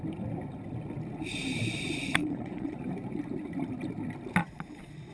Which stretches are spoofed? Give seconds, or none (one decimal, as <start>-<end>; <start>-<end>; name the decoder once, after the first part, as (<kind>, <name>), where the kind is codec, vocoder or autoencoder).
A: 2.2-2.8 (vocoder, Vocos); 4.4-5.1